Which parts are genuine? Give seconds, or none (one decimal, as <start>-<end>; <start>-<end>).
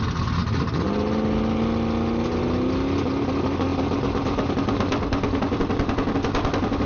0.0-6.9